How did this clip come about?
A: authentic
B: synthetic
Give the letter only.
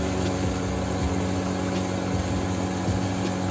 A